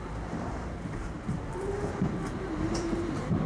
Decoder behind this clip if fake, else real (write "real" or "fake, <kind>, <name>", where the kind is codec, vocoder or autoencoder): fake, vocoder, BigVGAN v2